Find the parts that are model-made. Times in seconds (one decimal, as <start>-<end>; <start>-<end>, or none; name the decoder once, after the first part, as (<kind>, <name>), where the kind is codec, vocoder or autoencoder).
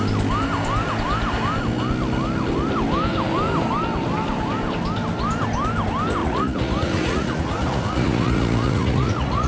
6.2-9.5 (vocoder, Vocos)